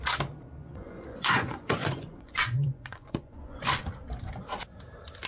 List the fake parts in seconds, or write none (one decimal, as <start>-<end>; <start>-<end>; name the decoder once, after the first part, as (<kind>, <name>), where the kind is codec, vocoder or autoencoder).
0.6-3.8 (vocoder, Vocos)

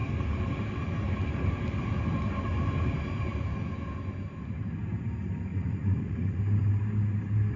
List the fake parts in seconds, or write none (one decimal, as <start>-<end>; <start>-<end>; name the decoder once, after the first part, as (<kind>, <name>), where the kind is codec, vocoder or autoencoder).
5.5-6.4 (vocoder, Vocos)

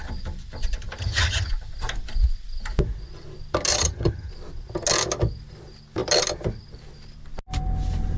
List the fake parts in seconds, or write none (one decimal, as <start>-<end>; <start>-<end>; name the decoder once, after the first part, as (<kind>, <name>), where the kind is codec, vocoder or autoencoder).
1.0-1.5 (vocoder, HiFi-GAN); 3.7-4.3

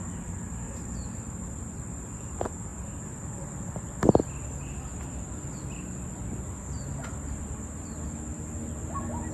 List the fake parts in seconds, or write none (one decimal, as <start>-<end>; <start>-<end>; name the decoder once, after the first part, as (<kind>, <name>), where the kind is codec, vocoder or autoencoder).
none

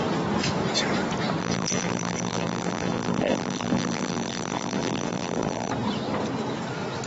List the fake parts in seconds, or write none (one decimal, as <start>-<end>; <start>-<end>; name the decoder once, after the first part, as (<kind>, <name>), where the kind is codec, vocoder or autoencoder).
1.4-5.7 (vocoder, BigVGAN v2)

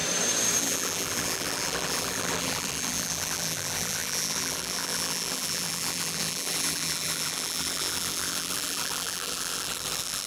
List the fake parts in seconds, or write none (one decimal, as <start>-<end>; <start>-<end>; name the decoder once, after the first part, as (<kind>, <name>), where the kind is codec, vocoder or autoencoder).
0.6-10.3 (vocoder, BigVGAN v2)

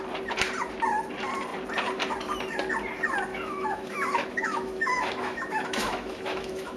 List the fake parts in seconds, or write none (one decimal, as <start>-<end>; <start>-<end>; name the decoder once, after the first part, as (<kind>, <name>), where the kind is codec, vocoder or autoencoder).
3.3-6.8 (autoencoder, DAC-VAE)

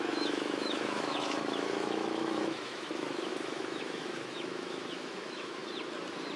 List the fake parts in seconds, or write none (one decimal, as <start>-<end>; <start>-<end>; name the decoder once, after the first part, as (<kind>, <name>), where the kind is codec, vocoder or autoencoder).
0.0-5.6 (autoencoder, DAC-VAE)